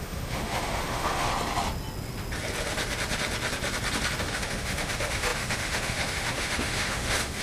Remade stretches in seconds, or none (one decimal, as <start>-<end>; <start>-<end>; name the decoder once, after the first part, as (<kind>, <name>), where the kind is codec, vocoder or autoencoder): 0.0-1.3 (autoencoder, DAC-VAE); 4.2-7.4